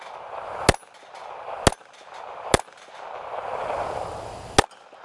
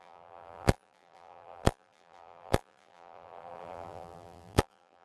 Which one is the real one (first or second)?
first